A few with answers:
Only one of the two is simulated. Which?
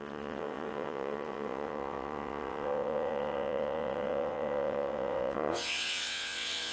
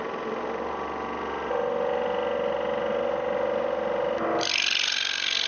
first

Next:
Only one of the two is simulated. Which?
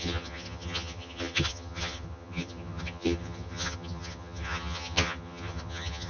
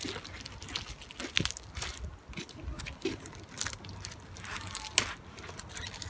first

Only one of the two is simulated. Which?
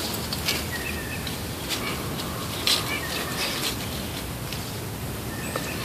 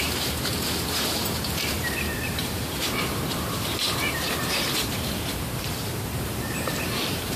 second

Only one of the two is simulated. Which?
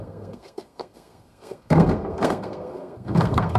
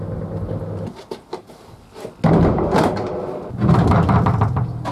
first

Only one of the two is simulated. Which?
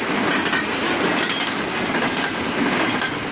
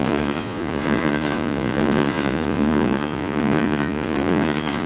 second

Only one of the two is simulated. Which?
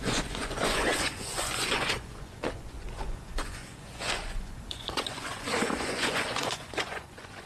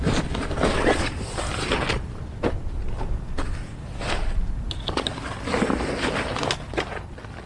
first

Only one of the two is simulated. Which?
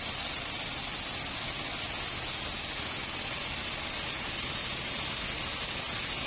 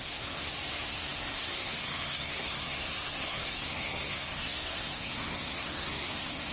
second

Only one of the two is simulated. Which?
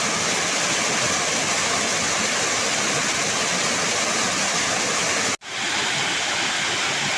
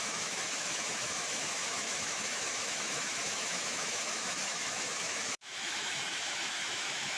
second